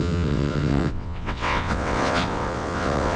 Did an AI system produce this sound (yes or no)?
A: yes